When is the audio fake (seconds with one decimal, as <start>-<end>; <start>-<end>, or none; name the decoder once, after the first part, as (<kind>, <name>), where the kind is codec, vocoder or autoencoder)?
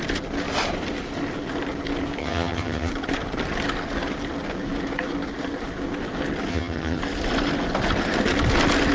2.2-2.9 (vocoder, HiFi-GAN); 6.5-7.0